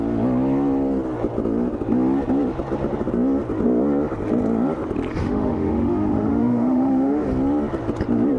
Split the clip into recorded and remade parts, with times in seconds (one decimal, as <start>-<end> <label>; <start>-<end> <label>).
0.0-5.2 recorded; 5.2-7.3 remade; 7.3-8.4 recorded